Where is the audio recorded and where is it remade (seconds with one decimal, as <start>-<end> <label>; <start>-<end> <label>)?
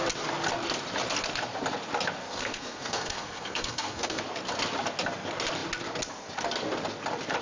0.0-2.2 recorded; 2.2-4.2 remade; 4.2-7.4 recorded